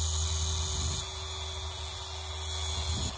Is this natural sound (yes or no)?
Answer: yes